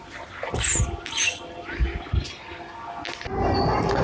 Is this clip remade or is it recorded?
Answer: recorded